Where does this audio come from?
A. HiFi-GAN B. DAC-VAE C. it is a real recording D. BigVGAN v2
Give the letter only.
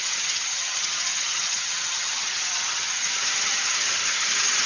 A